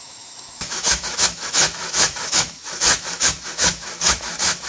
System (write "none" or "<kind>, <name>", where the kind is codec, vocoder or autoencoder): autoencoder, DAC-VAE